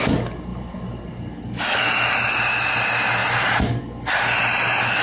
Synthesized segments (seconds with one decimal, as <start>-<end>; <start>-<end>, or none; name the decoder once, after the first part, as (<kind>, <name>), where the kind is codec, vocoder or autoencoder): none